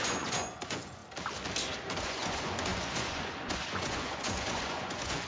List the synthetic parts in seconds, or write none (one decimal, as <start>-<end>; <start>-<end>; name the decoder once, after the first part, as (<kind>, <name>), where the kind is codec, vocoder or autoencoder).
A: 0.0-1.0 (vocoder, Vocos); 2.0-5.3